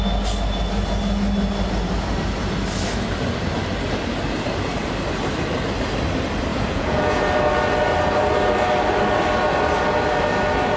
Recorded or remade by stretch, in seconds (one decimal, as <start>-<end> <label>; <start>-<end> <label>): 0.0-6.5 recorded; 6.5-7.2 remade; 7.2-10.8 recorded